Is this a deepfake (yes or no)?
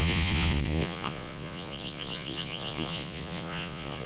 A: yes